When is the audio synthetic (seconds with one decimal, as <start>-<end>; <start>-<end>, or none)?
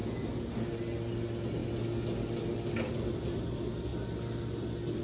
none